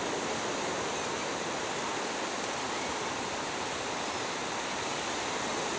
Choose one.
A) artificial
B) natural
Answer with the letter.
B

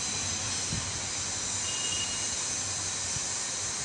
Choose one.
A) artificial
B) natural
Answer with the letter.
B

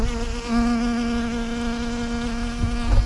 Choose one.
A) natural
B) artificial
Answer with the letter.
A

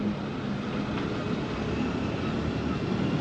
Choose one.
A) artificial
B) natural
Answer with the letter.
B